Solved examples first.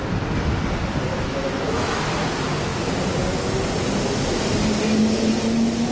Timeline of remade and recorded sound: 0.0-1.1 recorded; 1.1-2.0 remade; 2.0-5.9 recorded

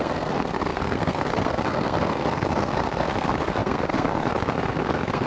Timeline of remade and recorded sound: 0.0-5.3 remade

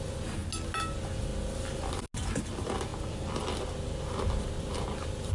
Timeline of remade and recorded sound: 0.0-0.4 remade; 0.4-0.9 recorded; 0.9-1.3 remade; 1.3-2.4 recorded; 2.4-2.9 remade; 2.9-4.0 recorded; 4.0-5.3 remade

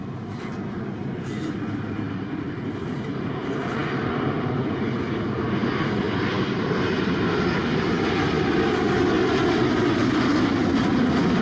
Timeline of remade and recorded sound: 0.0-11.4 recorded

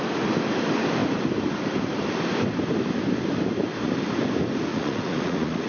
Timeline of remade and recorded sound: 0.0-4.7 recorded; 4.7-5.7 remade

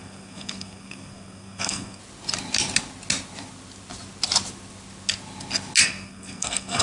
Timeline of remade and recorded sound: 0.0-2.0 remade; 2.0-5.8 recorded; 5.8-6.8 remade